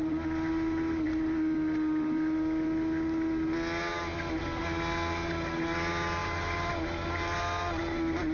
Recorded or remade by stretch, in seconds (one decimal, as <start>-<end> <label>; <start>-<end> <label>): 0.0-8.3 recorded

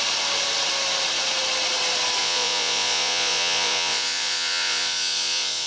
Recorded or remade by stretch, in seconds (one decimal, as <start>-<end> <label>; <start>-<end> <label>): 0.0-2.2 recorded; 2.2-5.7 remade

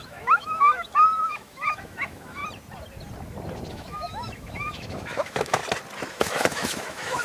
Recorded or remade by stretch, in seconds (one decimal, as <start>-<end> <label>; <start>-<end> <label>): 0.0-2.4 remade; 2.4-3.7 recorded; 3.7-5.6 remade; 5.6-6.1 recorded; 6.1-7.2 remade

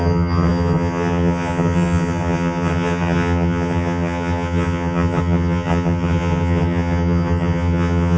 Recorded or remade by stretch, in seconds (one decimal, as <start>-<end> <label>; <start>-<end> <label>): 0.0-8.2 remade